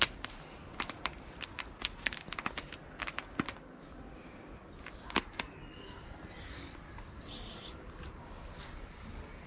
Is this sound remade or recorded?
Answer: recorded